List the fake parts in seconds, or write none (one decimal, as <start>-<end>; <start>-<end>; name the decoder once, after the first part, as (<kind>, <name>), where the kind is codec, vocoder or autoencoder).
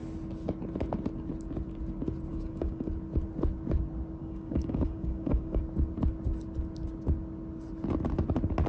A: 2.3-2.9 (codec, DAC); 4.2-5.6